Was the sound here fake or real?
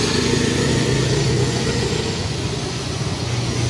fake